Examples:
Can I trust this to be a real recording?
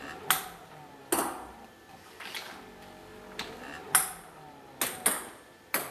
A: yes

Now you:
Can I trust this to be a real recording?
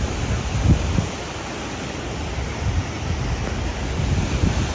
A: yes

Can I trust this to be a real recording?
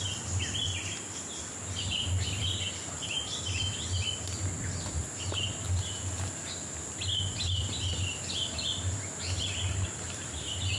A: yes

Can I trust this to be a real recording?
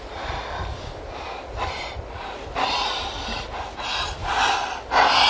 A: yes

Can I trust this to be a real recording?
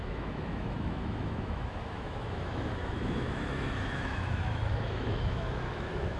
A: no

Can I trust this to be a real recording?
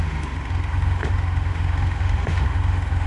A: no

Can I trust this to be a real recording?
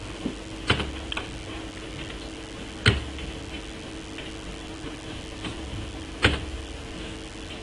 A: yes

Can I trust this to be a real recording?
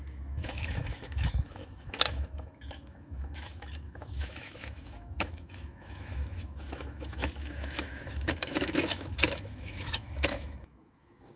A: no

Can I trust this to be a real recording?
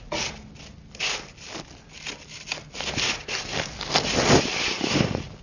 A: yes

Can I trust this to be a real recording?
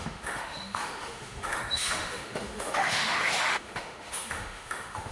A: no